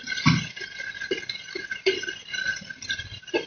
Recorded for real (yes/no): yes